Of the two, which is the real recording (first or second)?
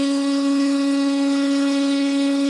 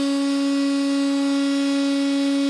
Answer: second